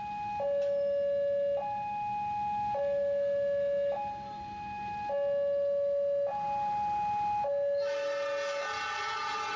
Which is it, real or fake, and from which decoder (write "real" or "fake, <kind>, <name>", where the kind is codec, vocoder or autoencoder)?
real